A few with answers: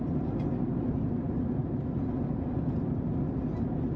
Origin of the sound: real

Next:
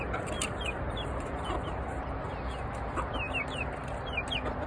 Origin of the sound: real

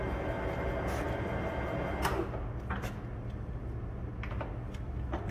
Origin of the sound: real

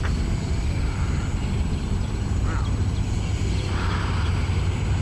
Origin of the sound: real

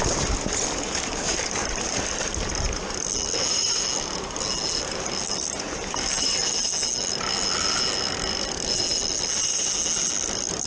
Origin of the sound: real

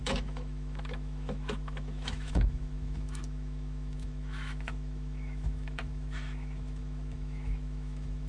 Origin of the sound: fake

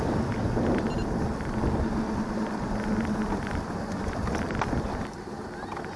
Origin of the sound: real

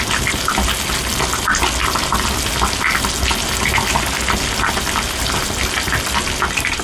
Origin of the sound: real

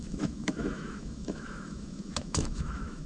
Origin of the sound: fake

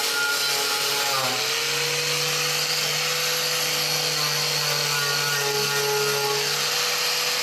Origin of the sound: real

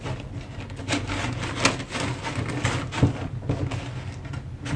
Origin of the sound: real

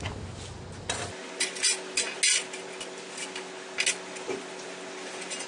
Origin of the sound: real